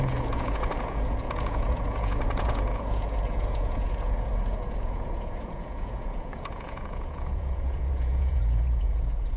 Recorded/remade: remade